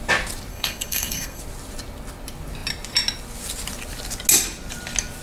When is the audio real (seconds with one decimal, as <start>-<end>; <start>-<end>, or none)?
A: 0.0-0.5; 1.4-5.2